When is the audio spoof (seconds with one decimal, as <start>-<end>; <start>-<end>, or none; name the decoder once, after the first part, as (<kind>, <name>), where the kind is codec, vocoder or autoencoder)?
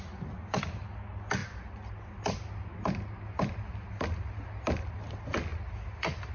none